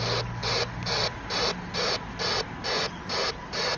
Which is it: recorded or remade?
recorded